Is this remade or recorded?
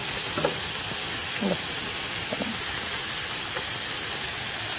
remade